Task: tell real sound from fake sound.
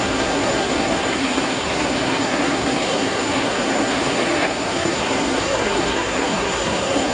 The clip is fake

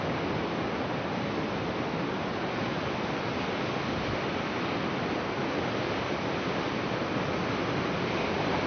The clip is real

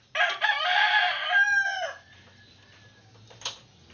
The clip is real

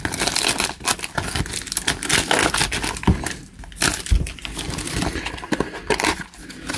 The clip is real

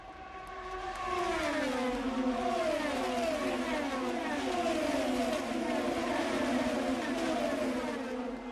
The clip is real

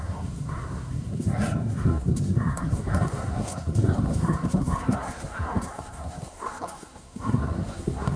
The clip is fake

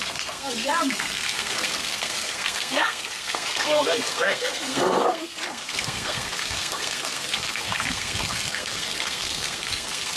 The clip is fake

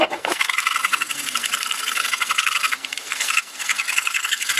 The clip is fake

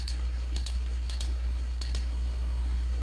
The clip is fake